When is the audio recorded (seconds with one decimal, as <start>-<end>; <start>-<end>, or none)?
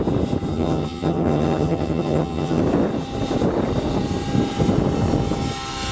0.0-0.5; 2.6-5.9